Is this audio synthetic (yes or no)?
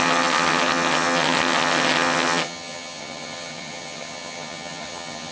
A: yes